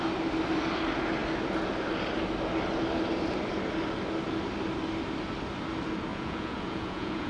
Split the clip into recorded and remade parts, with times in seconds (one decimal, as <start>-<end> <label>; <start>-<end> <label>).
0.0-6.1 recorded; 6.1-7.3 remade

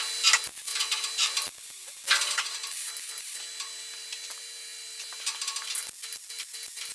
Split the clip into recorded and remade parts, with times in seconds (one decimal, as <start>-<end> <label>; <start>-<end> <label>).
0.0-6.9 recorded

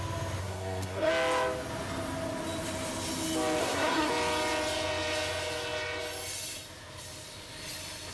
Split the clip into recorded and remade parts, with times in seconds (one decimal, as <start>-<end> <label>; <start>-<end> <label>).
0.0-0.4 recorded; 0.4-1.1 remade; 1.1-3.6 recorded; 3.6-4.1 remade; 4.1-8.1 recorded

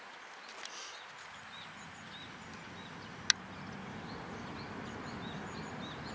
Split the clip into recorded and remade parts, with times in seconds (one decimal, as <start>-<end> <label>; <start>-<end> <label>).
0.0-6.1 recorded

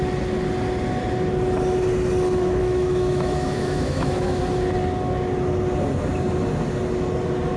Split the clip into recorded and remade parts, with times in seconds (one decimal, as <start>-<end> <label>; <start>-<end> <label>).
0.0-2.6 recorded; 2.6-4.4 remade; 4.4-7.6 recorded

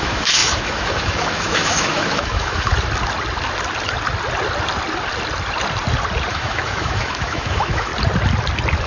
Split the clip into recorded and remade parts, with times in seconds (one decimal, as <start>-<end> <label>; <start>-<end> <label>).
0.0-2.7 remade; 2.7-6.3 recorded; 6.3-7.9 remade; 7.9-8.9 recorded

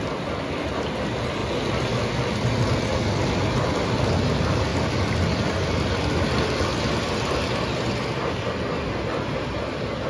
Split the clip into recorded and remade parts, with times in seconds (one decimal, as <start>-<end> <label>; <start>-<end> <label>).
0.0-10.1 recorded

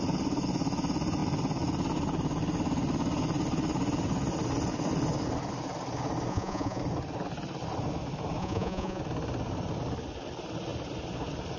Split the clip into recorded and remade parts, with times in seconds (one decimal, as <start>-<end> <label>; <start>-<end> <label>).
0.0-6.3 recorded; 6.3-6.8 remade; 6.8-8.4 recorded; 8.4-9.0 remade; 9.0-11.6 recorded